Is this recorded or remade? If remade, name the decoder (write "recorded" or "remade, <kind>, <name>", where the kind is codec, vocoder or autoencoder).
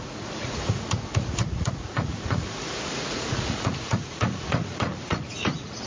remade, vocoder, Vocos